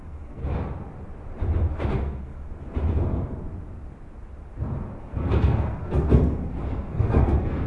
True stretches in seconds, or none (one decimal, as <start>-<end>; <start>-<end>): 0.4-1.7; 2.5-5.0